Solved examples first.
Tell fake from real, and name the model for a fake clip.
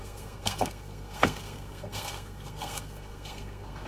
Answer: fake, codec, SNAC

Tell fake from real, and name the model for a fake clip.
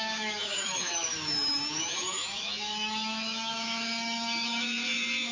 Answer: fake, autoencoder, DAC-VAE